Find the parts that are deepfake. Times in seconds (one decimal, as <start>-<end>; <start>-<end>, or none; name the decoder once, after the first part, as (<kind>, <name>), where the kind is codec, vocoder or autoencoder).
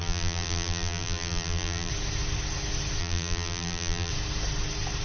0.0-1.9 (vocoder, BigVGAN v2); 3.0-4.1